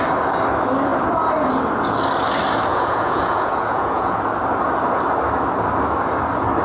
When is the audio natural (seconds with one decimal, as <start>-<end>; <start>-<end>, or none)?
0.0-2.7; 4.2-6.6